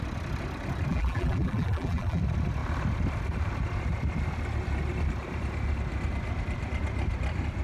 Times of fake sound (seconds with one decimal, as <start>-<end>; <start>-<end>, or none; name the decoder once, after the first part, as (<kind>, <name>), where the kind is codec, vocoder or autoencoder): 0.9-2.2 (vocoder, BigVGAN v2)